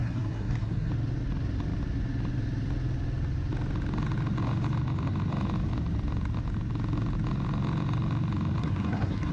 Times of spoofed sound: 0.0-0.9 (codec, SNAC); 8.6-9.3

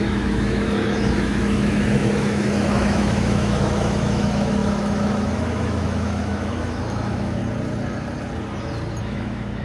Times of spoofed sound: 0.0-7.4 (autoencoder, DAC-VAE); 9.0-9.6

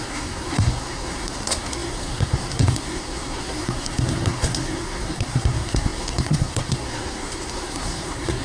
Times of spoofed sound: 0.0-8.4 (codec, SNAC)